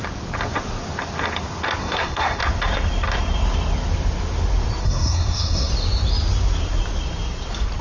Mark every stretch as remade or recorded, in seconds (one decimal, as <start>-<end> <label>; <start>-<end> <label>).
0.0-1.8 recorded; 1.8-2.4 remade; 2.4-4.8 recorded; 4.8-5.7 remade; 5.7-7.8 recorded